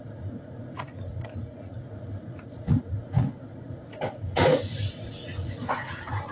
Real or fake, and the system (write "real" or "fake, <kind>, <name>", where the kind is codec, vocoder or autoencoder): fake, vocoder, Vocos